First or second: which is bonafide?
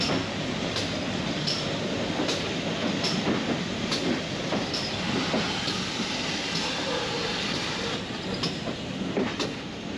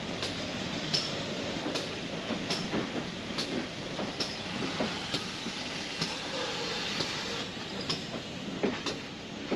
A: first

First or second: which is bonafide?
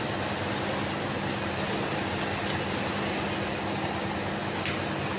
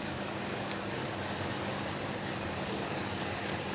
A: first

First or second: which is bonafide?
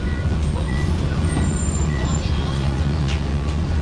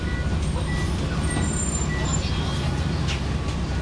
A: second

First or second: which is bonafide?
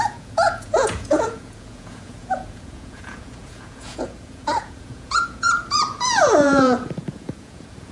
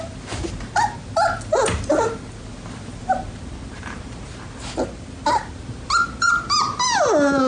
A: second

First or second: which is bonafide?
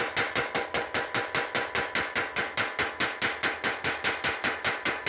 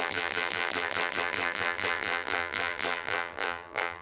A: first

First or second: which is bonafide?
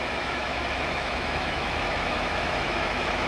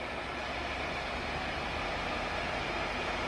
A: second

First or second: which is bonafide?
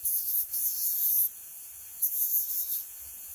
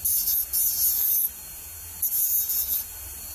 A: second